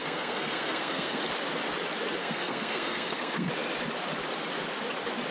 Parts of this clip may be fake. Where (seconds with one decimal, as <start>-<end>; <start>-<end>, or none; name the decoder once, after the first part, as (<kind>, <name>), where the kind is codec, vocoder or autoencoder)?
0.0-1.2 (codec, SNAC); 2.2-3.5